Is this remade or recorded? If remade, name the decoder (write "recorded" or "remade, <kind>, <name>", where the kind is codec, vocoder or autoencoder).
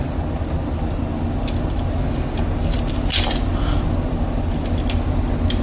recorded